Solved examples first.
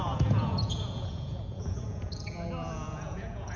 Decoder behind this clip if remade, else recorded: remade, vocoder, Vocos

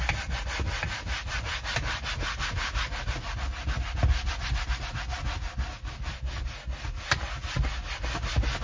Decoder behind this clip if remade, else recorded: recorded